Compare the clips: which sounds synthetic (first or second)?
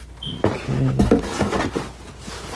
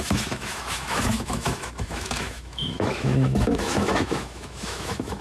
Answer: second